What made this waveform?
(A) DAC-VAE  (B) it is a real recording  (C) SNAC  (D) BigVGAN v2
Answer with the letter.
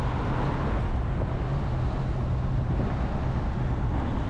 B